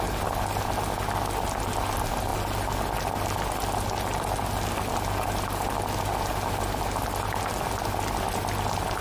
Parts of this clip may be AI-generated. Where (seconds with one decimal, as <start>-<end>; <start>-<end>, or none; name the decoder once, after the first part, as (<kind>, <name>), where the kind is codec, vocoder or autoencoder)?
2.3-7.4 (vocoder, BigVGAN v2)